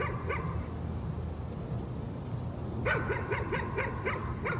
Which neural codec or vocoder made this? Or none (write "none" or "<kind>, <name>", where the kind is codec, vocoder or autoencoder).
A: none